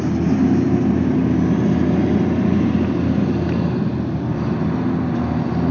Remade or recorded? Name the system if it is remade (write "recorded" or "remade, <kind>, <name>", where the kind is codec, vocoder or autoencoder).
recorded